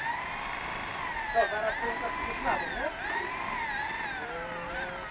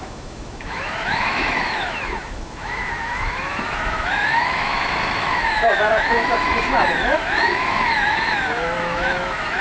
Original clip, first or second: first